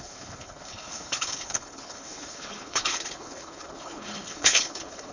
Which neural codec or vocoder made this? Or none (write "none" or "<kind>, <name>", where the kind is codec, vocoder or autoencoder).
codec, HILCodec